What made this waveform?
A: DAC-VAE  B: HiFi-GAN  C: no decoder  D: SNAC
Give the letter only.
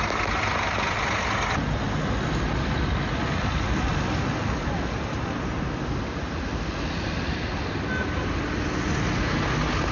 C